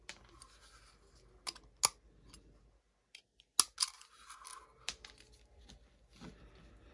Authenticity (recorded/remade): recorded